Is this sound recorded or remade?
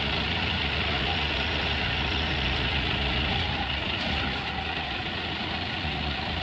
remade